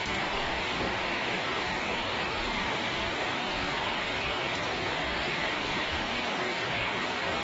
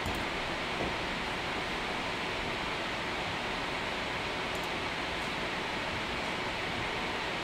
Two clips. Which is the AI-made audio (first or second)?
first